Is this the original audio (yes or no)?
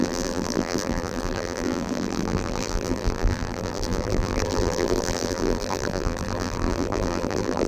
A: no